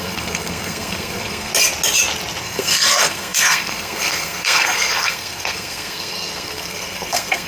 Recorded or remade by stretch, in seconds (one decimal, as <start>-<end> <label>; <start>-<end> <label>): 0.0-1.5 remade; 1.5-2.4 recorded; 2.4-7.5 remade